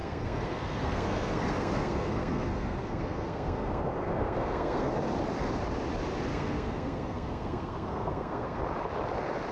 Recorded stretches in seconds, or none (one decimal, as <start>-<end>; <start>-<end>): 4.9-6.3; 8.6-9.5